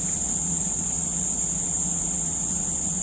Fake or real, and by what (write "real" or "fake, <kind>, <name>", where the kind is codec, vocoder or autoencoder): fake, vocoder, Vocos